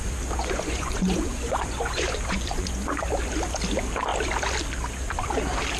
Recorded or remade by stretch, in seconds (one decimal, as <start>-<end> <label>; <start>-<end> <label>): 0.0-0.4 recorded; 0.4-3.0 remade; 3.0-5.8 recorded